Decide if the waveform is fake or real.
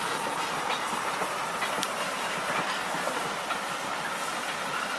real